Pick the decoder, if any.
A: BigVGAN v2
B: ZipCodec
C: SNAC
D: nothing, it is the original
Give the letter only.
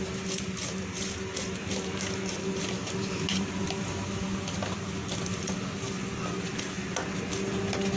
D